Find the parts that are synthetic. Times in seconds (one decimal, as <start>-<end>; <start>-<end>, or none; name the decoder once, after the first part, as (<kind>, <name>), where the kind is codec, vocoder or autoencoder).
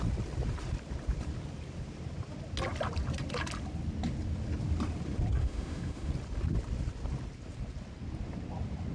5.4-6.1 (autoencoder, DAC-VAE)